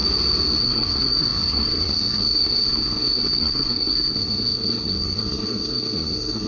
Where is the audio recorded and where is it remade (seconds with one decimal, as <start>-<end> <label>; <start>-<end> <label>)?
0.0-0.6 recorded; 0.6-6.5 remade